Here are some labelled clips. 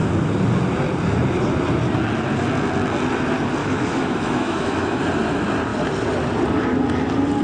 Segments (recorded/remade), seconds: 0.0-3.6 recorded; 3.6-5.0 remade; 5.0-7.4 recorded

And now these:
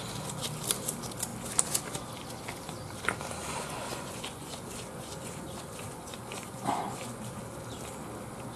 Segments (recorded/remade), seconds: 0.0-3.4 recorded; 3.4-7.4 remade; 7.4-8.6 recorded

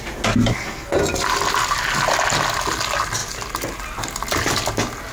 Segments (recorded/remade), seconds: 0.0-0.5 recorded; 0.5-1.0 remade; 1.0-5.1 recorded

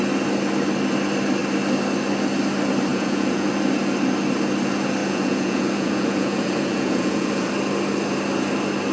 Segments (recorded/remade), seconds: 0.0-2.9 recorded; 2.9-3.5 remade; 3.5-5.0 recorded; 5.0-7.5 remade; 7.5-8.9 recorded

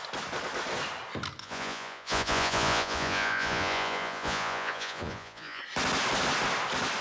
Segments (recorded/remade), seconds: 0.0-1.4 recorded; 1.4-5.6 remade; 5.6-7.0 recorded

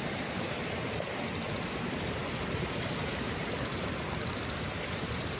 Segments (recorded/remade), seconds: 0.0-2.2 recorded; 2.2-5.4 remade

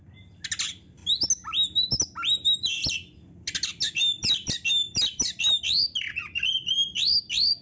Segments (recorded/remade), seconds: 0.0-7.6 recorded